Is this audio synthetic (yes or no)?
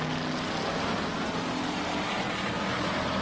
no